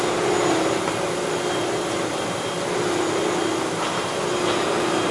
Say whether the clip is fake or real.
real